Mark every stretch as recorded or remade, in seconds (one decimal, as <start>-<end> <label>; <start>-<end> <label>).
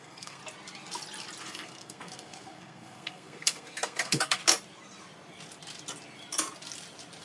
0.0-0.4 remade; 0.4-1.4 recorded; 1.4-4.4 remade; 4.4-7.2 recorded